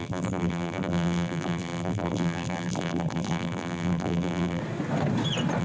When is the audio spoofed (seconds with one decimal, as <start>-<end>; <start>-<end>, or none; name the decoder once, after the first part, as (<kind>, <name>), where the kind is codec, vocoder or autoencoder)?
0.0-4.6 (vocoder, BigVGAN v2)